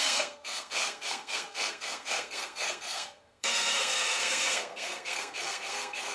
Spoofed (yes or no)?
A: yes